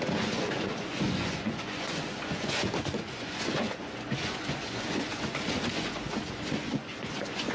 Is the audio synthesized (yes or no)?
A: yes